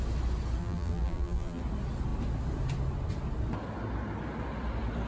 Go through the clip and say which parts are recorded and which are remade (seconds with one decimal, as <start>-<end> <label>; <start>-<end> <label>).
0.0-0.6 recorded; 0.6-1.6 remade; 1.6-5.1 recorded